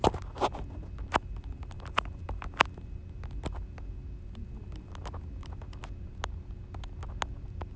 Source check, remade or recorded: recorded